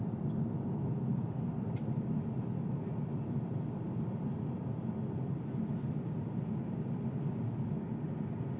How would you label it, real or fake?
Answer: real